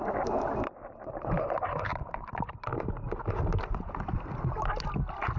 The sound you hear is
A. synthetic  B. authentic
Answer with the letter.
B